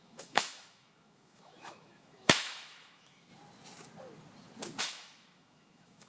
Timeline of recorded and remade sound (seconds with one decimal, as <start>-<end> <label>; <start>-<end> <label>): 0.0-3.3 remade; 3.3-4.8 recorded; 4.8-6.1 remade